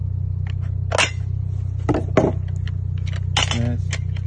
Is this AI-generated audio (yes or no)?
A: no